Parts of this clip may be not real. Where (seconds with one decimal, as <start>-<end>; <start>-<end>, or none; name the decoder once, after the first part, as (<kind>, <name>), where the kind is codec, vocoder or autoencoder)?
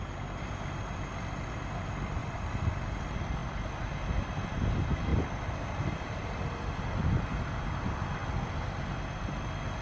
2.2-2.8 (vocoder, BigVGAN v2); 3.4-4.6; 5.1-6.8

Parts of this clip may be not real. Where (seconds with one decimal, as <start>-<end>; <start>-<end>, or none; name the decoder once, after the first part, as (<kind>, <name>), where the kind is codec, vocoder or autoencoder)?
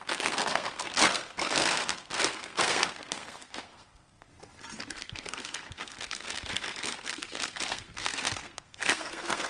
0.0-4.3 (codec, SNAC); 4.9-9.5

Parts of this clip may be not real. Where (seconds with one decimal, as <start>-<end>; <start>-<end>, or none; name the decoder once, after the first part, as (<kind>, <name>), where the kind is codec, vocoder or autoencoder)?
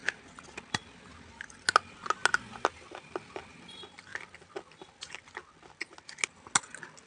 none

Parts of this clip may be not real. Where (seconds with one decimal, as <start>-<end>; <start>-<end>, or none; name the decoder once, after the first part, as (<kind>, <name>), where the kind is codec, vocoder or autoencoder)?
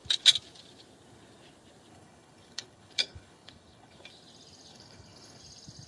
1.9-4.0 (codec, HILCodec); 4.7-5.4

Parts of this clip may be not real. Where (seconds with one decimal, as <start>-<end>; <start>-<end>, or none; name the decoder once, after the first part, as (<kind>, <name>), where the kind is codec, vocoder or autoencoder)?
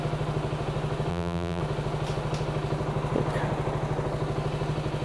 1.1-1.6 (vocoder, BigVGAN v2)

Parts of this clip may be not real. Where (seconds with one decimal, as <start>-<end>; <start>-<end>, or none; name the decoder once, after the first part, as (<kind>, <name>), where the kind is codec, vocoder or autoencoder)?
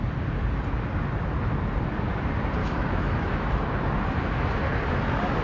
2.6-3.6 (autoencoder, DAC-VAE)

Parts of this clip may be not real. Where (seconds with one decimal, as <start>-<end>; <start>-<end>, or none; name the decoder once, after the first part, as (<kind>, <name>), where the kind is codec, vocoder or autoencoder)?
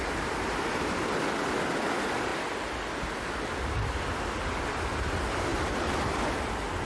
none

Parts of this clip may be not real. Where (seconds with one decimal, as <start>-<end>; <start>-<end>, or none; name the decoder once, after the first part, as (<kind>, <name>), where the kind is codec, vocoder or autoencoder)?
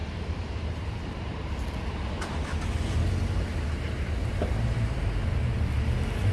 0.0-1.7 (vocoder, BigVGAN v2); 3.5-5.1